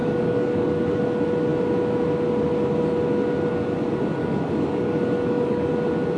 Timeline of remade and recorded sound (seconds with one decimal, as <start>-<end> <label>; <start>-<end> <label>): 0.0-1.0 remade; 1.0-4.2 recorded; 4.2-5.7 remade; 5.7-6.2 recorded

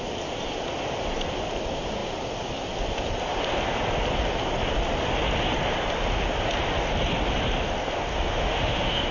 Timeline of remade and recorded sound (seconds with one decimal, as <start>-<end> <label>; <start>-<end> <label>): 0.0-8.1 recorded; 8.1-9.1 remade

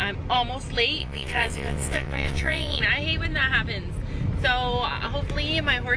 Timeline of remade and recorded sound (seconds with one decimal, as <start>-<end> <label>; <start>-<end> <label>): 0.0-1.0 recorded; 1.0-2.8 remade; 2.8-6.0 recorded

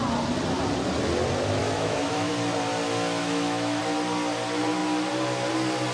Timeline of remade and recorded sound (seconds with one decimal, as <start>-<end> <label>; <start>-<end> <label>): 0.0-1.6 recorded; 1.6-2.3 remade; 2.3-3.2 recorded; 3.2-3.8 remade; 3.8-5.9 recorded

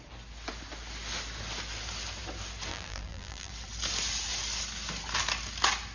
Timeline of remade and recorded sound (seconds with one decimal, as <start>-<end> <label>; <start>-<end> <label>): 0.0-2.7 recorded; 2.7-3.5 remade; 3.5-5.9 recorded

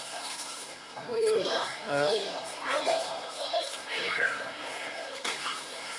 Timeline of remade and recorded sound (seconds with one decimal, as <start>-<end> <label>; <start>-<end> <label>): 0.0-6.0 remade

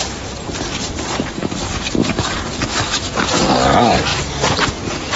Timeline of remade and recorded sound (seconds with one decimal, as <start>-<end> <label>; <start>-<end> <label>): 0.0-1.4 recorded; 1.4-3.1 remade; 3.1-5.2 recorded

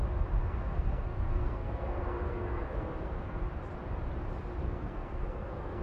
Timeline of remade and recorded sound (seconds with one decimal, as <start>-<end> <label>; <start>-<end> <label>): 0.0-0.4 recorded; 0.4-3.4 remade; 3.4-4.6 recorded; 4.6-5.8 remade